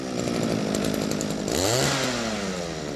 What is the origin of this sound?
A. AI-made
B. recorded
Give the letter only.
B